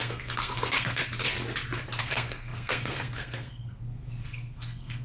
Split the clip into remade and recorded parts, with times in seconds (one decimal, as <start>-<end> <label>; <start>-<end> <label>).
0.0-1.0 remade; 1.0-2.0 recorded; 2.0-5.0 remade